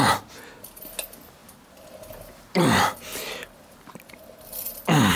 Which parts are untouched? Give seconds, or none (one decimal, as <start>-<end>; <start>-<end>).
0.0-1.4; 4.5-5.2